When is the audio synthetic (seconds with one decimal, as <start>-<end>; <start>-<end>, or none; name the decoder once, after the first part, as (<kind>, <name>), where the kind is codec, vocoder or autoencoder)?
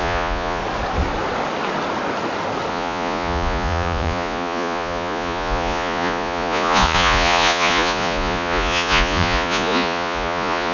0.0-0.6 (vocoder, Vocos); 2.7-10.7